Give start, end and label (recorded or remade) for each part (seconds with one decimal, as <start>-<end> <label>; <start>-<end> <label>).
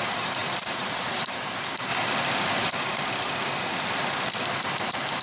0.0-1.9 remade; 1.9-2.7 recorded; 2.7-5.2 remade